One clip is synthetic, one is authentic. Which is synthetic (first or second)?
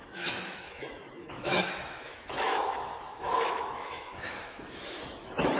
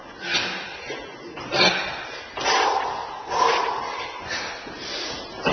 first